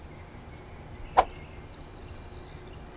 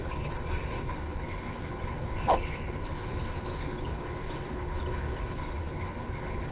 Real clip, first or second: first